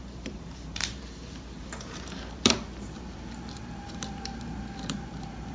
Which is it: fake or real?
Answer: fake